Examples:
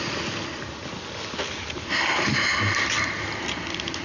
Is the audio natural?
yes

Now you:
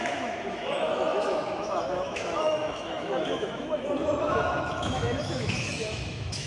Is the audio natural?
no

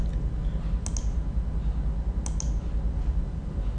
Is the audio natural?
yes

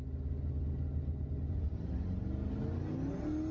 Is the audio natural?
yes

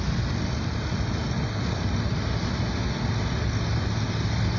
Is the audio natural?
yes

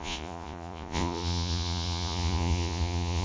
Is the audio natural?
no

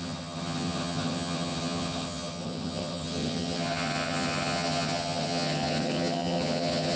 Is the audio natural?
no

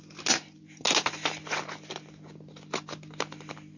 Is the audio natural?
yes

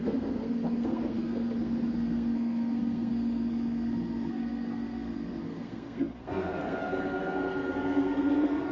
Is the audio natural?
no